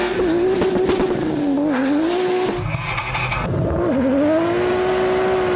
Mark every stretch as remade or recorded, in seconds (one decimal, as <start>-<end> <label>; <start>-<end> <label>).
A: 0.0-5.6 recorded